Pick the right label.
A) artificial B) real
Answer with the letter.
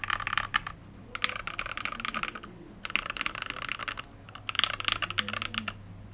B